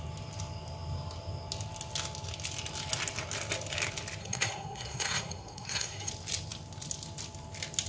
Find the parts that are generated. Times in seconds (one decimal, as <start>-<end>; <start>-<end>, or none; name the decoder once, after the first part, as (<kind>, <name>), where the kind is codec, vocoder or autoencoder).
4.2-6.1 (codec, SNAC)